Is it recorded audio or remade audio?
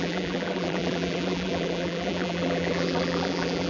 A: remade